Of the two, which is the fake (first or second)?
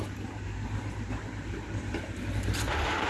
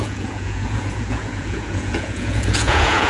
second